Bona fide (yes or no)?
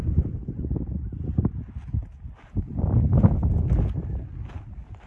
yes